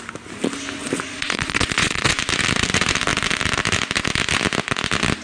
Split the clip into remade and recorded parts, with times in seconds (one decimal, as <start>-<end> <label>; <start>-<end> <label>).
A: 0.0-0.8 recorded; 0.8-2.1 remade; 2.1-5.2 recorded